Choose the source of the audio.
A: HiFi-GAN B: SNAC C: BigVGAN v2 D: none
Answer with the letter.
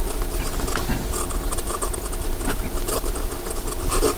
D